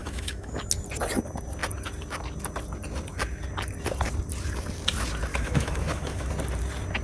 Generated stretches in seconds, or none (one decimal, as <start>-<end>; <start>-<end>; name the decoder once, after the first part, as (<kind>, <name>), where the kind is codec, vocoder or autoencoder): 0.0-0.6 (autoencoder, DAC-VAE); 5.3-6.3